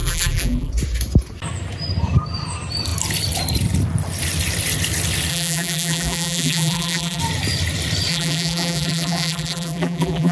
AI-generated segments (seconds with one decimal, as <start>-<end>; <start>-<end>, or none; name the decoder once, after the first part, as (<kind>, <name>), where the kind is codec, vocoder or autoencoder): 0.0-0.7 (vocoder, BigVGAN v2); 5.3-7.2; 8.1-10.3